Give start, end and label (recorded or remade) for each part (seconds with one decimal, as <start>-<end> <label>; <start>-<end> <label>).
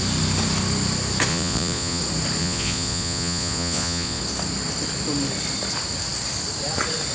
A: 0.0-1.3 recorded; 1.3-2.0 remade; 2.0-2.4 recorded; 2.4-4.2 remade; 4.2-7.1 recorded